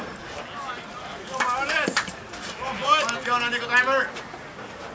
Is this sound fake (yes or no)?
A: no